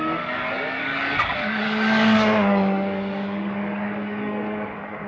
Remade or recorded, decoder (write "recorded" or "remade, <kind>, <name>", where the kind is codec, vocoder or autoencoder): remade, codec, DAC